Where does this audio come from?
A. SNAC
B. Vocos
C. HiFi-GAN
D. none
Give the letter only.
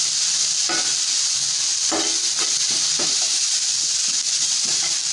D